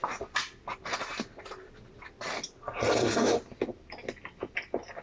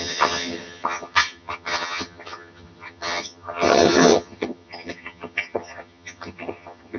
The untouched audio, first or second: first